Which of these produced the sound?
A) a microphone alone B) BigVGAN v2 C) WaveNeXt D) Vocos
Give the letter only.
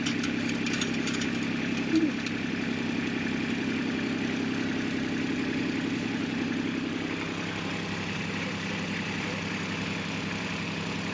B